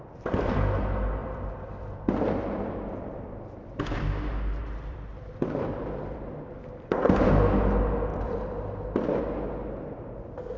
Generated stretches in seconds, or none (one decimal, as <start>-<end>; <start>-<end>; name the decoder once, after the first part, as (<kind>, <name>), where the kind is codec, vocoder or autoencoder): 1.2-4.1 (vocoder, BigVGAN v2); 4.6-7.3; 8.1-9.2